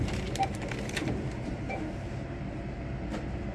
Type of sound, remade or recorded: remade